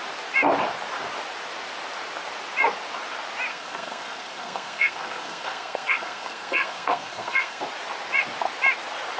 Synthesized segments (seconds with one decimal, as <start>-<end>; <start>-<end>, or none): 3.5-7.6